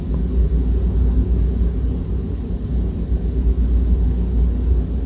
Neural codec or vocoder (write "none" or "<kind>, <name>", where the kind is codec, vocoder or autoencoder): none